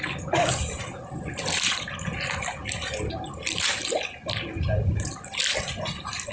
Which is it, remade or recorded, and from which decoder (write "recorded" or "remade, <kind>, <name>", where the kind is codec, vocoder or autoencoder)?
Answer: recorded